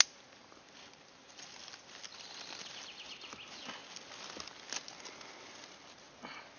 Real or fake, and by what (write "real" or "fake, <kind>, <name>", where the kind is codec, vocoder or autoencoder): real